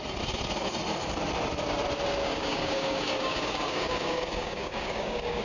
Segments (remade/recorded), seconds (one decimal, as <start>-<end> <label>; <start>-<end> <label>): 0.0-2.2 recorded; 2.2-5.4 remade